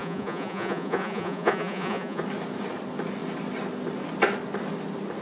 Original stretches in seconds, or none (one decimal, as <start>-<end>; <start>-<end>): 2.2-5.2